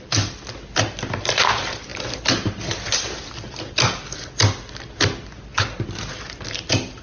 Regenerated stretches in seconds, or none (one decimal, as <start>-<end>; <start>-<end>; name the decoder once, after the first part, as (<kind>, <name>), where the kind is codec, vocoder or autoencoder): none